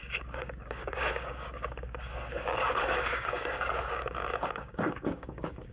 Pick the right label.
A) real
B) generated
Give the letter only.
B